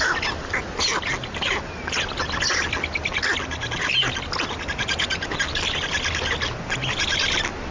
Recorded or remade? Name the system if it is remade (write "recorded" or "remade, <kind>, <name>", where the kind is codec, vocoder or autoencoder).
recorded